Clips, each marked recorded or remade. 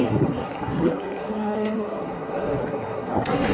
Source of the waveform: remade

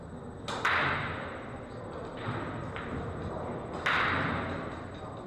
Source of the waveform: recorded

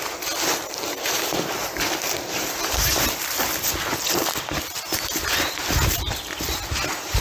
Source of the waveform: recorded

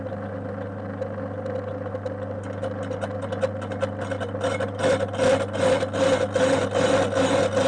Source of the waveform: recorded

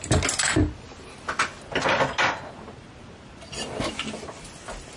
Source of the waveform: recorded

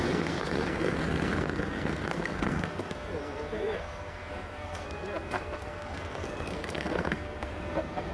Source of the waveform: remade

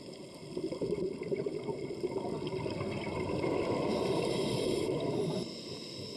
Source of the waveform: recorded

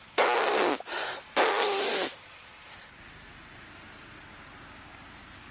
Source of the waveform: recorded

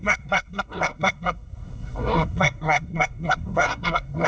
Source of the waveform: remade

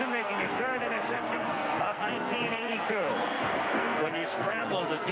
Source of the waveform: remade